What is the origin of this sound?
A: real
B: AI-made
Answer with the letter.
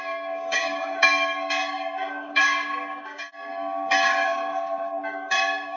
B